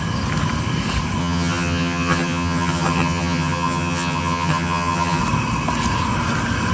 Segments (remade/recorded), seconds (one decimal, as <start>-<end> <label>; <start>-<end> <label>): 0.0-1.2 recorded; 1.2-5.2 remade; 5.2-6.7 recorded